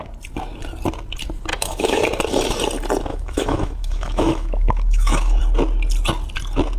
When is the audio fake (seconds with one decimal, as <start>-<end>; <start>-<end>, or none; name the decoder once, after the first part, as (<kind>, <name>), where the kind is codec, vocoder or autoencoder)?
1.5-2.0 (autoencoder, DAC-VAE); 3.1-5.4